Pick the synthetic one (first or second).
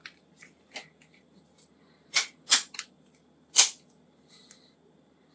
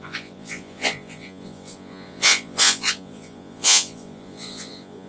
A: second